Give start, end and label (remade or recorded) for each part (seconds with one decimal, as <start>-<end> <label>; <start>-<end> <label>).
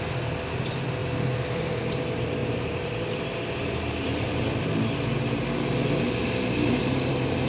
0.0-1.0 recorded; 1.0-1.8 remade; 1.8-2.4 recorded; 2.4-2.9 remade; 2.9-3.6 recorded; 3.6-4.4 remade; 4.4-6.2 recorded; 6.2-7.5 remade